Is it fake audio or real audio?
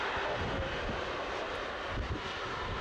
real